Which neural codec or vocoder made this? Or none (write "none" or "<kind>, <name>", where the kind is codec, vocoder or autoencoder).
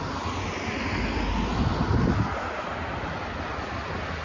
none